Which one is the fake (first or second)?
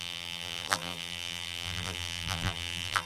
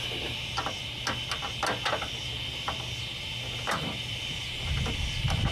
first